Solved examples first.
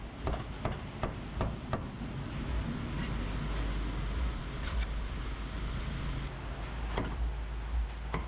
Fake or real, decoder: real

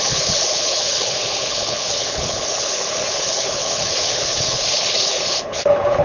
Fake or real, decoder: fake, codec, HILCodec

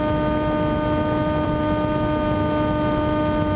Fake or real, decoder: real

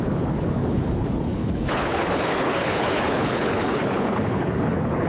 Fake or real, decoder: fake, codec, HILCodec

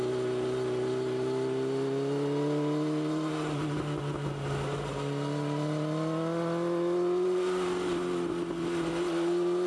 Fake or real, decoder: real